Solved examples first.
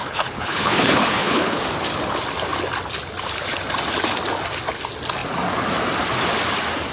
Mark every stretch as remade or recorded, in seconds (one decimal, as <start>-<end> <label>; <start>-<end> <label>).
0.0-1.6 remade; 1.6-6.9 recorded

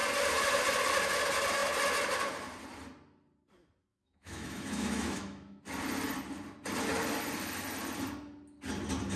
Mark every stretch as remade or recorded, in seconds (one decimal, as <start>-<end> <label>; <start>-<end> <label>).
0.0-3.9 recorded; 3.9-5.6 remade; 5.6-9.2 recorded

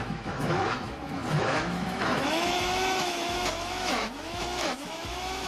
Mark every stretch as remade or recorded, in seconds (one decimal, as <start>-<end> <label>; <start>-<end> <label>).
0.0-5.5 remade